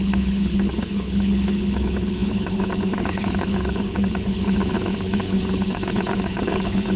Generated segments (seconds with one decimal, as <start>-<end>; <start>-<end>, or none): 0.0-7.0

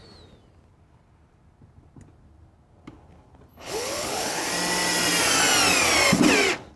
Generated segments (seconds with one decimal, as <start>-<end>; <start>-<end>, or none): 3.5-4.5

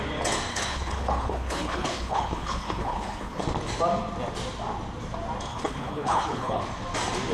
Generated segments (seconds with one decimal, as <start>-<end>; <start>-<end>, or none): 0.5-3.4; 5.5-6.6

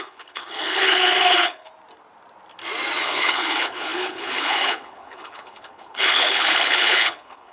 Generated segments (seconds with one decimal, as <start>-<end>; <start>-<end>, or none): 0.0-1.7; 3.0-7.5

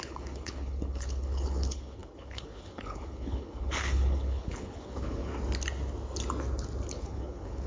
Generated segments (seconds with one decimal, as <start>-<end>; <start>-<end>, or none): 0.0-5.3; 6.9-7.7

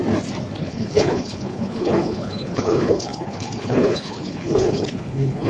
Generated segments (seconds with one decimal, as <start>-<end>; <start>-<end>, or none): 0.6-5.5

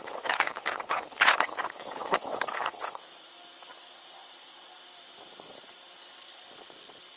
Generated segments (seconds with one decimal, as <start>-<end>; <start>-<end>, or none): 0.0-3.0

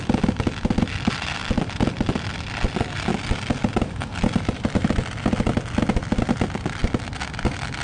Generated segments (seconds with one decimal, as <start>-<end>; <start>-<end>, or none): none